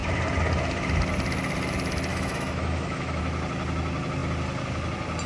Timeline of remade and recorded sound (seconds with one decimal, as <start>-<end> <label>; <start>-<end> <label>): 0.0-2.1 recorded; 2.1-3.2 remade; 3.2-5.3 recorded